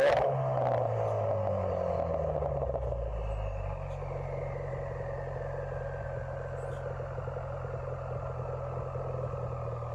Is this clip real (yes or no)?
yes